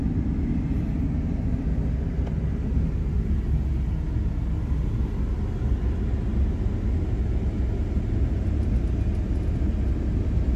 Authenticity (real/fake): real